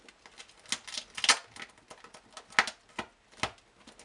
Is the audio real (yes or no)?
yes